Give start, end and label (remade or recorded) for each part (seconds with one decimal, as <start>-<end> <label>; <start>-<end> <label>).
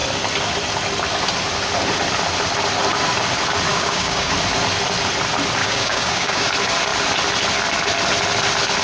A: 0.0-3.7 recorded; 3.7-4.3 remade; 4.3-5.6 recorded; 5.6-6.5 remade; 6.5-8.8 recorded